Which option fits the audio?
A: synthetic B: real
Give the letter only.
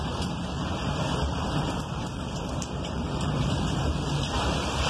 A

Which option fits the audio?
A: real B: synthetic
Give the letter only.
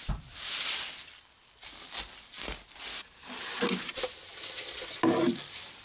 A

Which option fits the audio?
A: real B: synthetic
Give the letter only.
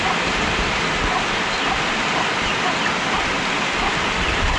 A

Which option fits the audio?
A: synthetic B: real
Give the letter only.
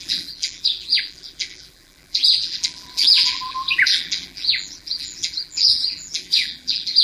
A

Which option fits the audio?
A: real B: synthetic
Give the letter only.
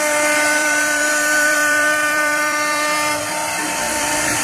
B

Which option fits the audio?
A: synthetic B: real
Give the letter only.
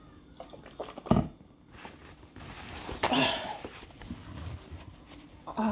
B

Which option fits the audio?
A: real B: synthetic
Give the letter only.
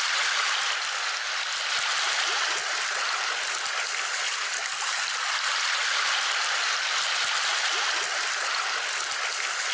A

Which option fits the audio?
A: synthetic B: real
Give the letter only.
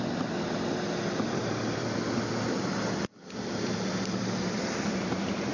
A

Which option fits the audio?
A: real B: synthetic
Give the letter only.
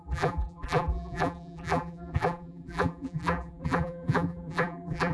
B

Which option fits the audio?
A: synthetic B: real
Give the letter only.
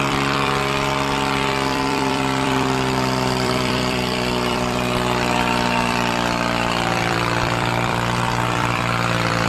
A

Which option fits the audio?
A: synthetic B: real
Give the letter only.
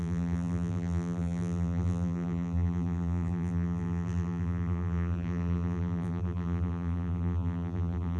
A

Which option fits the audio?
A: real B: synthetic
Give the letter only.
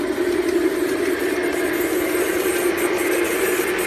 A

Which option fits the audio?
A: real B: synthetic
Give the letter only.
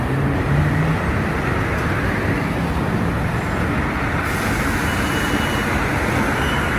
A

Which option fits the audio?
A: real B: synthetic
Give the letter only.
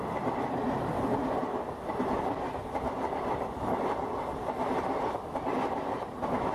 A